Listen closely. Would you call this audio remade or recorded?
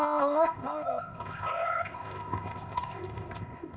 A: remade